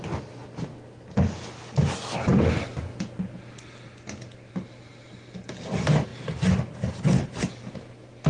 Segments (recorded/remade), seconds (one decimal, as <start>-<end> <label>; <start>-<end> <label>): 0.0-6.1 recorded; 6.1-7.7 remade; 7.7-8.3 recorded